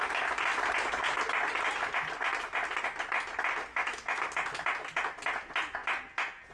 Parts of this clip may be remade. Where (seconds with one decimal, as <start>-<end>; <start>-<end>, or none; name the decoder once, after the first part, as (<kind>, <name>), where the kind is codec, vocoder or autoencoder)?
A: 3.7-4.2 (autoencoder, DAC-VAE)